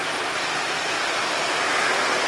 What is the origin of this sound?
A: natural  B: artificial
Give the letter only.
A